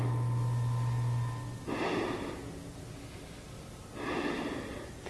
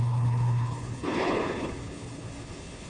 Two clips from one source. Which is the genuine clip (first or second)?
first